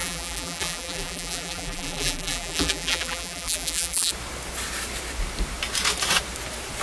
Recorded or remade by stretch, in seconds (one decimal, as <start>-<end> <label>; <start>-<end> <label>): 0.0-4.1 remade; 4.1-6.8 recorded